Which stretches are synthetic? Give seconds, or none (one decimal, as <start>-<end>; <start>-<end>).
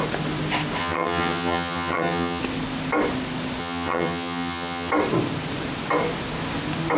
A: 0.8-2.4; 3.6-4.9